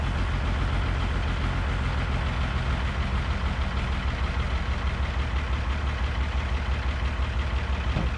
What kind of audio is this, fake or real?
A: real